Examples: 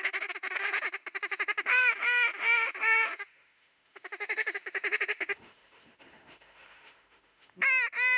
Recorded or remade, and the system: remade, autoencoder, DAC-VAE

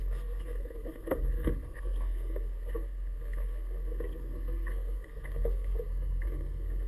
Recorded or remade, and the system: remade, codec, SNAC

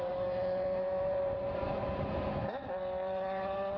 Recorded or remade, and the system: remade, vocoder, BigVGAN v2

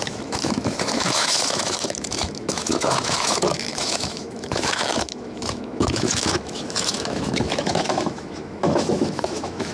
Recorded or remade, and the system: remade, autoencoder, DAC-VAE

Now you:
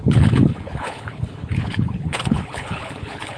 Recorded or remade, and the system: remade, codec, HILCodec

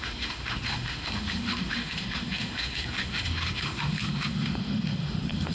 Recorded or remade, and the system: remade, autoencoder, DAC-VAE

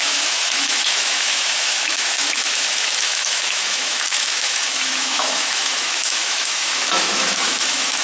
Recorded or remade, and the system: remade, autoencoder, DAC-VAE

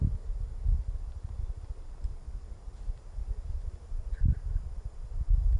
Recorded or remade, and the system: recorded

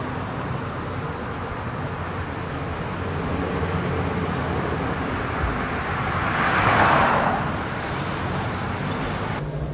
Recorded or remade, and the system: recorded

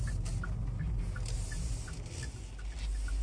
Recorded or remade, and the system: recorded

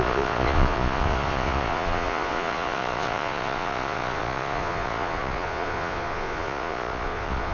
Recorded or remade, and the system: remade, vocoder, Vocos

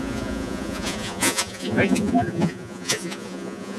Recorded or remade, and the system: remade, vocoder, Vocos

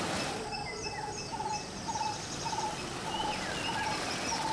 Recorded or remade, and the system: recorded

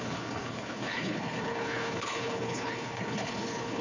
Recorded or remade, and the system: remade, codec, HILCodec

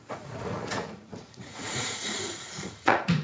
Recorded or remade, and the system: remade, vocoder, Vocos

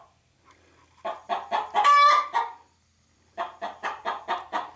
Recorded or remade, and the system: recorded